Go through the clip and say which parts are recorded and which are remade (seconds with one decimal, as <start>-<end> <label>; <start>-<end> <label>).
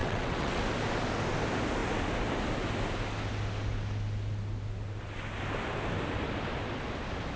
0.0-0.6 remade; 0.6-7.4 recorded